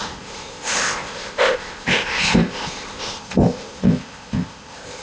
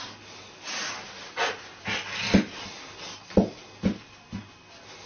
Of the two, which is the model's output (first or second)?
first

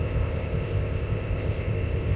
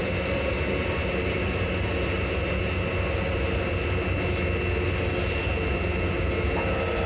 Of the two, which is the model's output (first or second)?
first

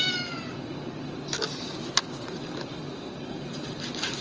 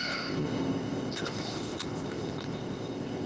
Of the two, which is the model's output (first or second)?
second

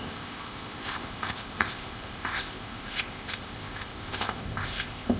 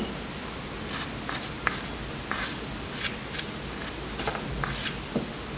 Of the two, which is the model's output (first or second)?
first